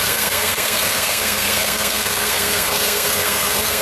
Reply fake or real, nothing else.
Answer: fake